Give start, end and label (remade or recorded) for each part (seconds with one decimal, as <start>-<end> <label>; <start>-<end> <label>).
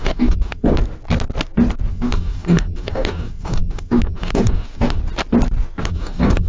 0.0-0.7 remade; 0.7-1.9 recorded; 1.9-5.0 remade; 5.0-5.8 recorded; 5.8-6.5 remade